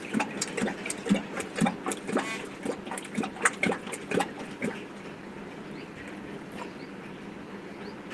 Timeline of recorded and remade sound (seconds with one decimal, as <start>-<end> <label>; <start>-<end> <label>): 0.0-8.1 recorded